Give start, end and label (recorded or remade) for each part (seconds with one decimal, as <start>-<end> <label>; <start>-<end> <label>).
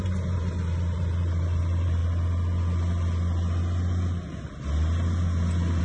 0.0-2.0 remade; 2.0-5.8 recorded